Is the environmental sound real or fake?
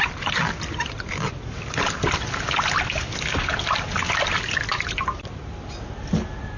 real